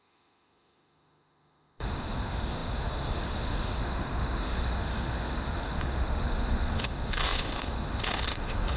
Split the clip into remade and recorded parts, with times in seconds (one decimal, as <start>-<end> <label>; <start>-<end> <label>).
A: 0.0-8.8 remade